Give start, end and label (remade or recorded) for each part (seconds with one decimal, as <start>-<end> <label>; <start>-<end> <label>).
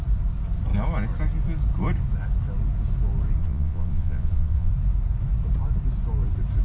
0.0-3.4 recorded; 3.4-4.7 remade; 4.7-6.6 recorded